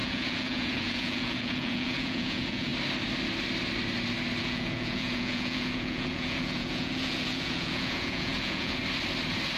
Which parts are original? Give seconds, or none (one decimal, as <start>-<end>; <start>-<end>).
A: 2.7-4.4; 8.8-9.6